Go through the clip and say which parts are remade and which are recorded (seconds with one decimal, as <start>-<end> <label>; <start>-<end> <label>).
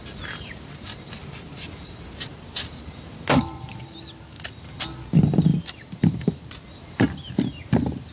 0.0-3.8 remade; 3.8-8.1 recorded